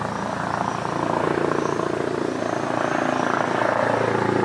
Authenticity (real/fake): real